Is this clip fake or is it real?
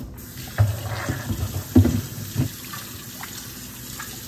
real